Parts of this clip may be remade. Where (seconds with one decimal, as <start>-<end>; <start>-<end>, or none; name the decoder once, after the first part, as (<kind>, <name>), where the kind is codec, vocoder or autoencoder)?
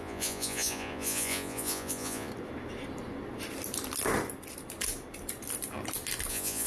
0.0-2.3 (vocoder, Vocos); 6.3-6.7